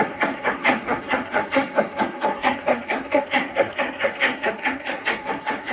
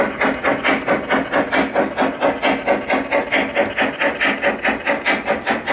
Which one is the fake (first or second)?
first